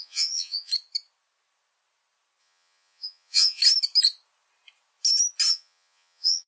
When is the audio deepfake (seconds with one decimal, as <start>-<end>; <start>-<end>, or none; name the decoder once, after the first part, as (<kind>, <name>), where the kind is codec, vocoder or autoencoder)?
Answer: 0.0-0.7 (vocoder, Vocos); 2.4-3.6; 5.5-6.5